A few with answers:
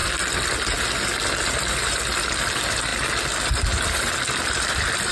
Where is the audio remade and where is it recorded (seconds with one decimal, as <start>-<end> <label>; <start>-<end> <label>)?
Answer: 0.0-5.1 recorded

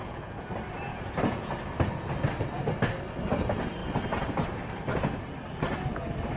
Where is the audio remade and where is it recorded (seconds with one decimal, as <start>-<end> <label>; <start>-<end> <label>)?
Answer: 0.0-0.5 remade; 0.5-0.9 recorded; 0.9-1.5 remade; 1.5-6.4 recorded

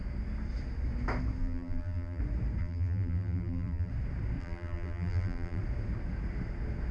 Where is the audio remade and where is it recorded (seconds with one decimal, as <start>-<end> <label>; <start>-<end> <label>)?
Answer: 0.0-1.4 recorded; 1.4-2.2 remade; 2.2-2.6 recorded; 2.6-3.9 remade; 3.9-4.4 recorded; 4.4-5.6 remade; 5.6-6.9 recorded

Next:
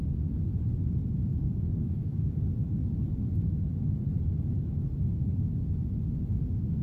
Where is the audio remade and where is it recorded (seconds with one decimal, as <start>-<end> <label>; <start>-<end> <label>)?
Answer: 0.0-1.3 recorded; 1.3-2.4 remade; 2.4-6.8 recorded

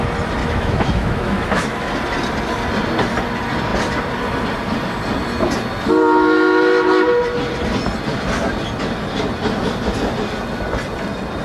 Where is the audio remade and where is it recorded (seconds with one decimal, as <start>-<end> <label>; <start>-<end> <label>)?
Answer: 0.0-0.4 recorded; 0.4-1.9 remade; 1.9-11.4 recorded

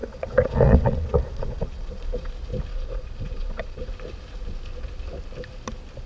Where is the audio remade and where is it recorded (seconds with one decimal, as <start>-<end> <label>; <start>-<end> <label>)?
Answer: 0.0-2.3 remade; 2.3-2.7 recorded; 2.7-3.9 remade; 3.9-6.1 recorded

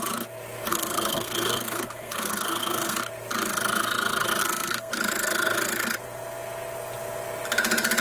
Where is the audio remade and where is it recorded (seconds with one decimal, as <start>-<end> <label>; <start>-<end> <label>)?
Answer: 0.0-0.7 recorded; 0.7-3.0 remade; 3.0-4.4 recorded; 4.4-4.9 remade; 4.9-8.0 recorded

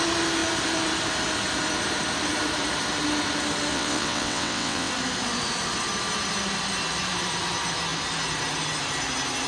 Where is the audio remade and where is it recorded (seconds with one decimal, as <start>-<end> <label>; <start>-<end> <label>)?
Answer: 0.0-3.7 recorded; 3.7-4.9 remade; 4.9-9.5 recorded